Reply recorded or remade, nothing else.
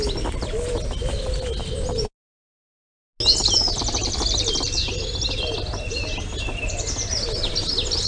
recorded